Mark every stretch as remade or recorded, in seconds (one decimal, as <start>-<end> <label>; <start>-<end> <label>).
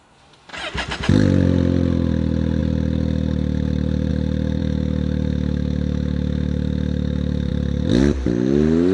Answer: 0.0-4.6 recorded; 4.6-7.5 remade; 7.5-8.9 recorded